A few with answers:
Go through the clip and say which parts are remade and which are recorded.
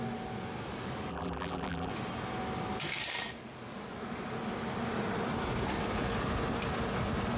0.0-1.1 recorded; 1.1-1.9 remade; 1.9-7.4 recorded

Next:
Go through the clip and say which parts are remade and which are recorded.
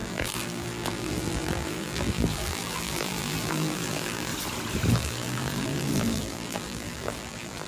0.0-4.3 remade; 4.3-4.9 recorded; 4.9-7.7 remade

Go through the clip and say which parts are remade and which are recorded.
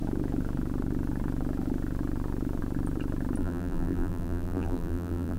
0.0-3.4 recorded; 3.4-5.4 remade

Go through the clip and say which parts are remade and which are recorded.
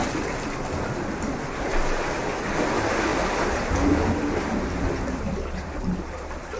0.0-3.1 recorded; 3.1-3.9 remade; 3.9-6.6 recorded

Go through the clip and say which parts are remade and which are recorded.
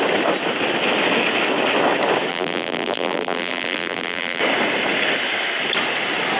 0.0-2.3 recorded; 2.3-4.4 remade; 4.4-6.4 recorded